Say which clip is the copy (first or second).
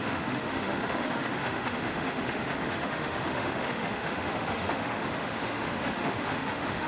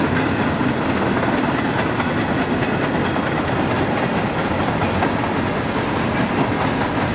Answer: first